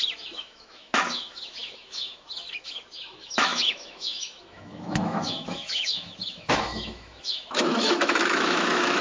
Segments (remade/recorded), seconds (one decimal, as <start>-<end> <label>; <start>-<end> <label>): 0.0-9.0 remade